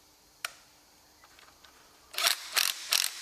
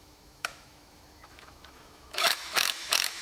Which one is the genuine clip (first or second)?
first